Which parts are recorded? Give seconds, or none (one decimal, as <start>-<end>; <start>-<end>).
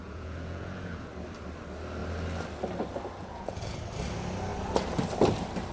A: 1.1-3.2; 3.8-5.7